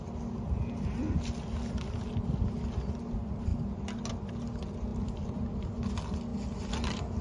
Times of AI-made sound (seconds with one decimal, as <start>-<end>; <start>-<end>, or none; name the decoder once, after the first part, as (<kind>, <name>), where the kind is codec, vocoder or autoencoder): 4.9-5.6 (vocoder, BigVGAN v2); 6.3-7.2